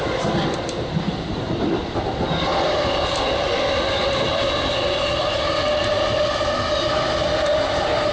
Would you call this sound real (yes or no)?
yes